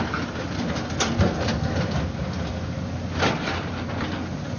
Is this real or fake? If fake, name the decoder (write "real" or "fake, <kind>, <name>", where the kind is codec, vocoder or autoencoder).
real